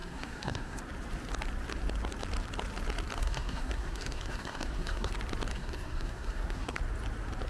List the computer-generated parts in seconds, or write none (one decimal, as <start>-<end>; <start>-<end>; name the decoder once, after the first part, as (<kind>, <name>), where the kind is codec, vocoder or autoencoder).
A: 0.0-0.8 (codec, SNAC); 3.2-5.1; 5.5-6.8